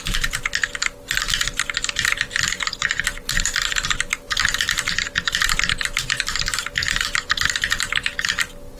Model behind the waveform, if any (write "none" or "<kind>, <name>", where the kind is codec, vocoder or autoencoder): none